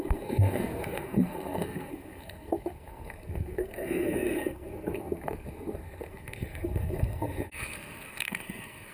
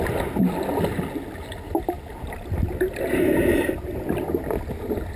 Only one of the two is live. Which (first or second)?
second